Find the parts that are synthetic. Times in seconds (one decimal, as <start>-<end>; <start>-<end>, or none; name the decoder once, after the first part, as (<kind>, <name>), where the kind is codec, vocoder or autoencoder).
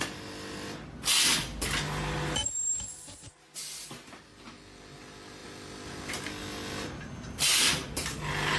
none